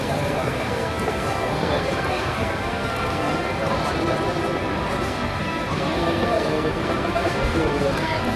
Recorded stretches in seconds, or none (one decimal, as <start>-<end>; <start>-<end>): 3.3-5.0